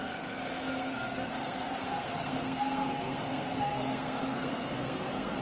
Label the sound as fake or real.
fake